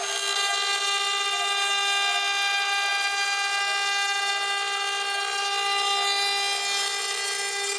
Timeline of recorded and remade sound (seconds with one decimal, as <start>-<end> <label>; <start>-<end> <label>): 0.0-7.8 recorded